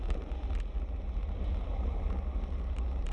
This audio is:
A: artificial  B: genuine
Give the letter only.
B